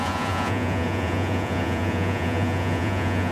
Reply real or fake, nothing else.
fake